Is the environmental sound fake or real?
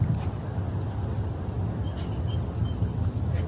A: real